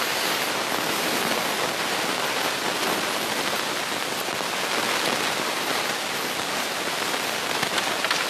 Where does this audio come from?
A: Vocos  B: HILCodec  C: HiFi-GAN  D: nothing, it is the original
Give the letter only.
D